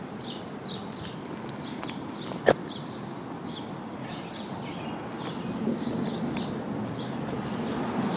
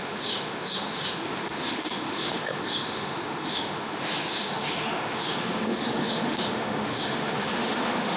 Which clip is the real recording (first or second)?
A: first